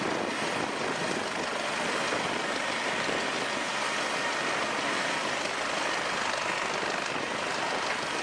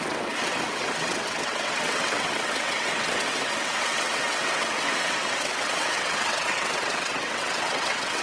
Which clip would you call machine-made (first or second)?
second